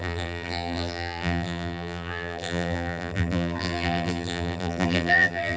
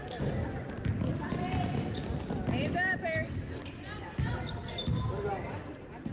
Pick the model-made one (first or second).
first